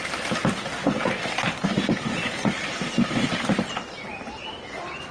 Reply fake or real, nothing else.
fake